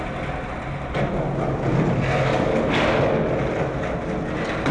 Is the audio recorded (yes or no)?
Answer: yes